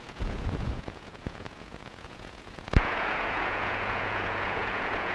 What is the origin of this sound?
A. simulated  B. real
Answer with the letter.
A